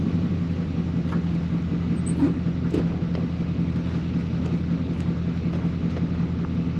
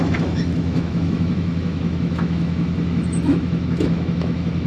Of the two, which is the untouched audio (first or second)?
first